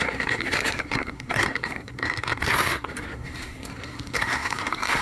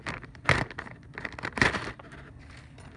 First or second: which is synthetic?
first